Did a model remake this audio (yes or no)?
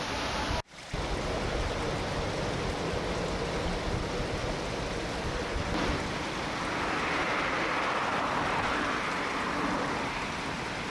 no